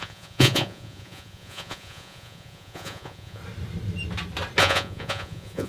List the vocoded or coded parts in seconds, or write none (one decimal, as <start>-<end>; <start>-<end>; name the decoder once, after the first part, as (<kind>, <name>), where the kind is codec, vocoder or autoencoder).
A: 0.0-3.4 (vocoder, Vocos); 4.6-5.7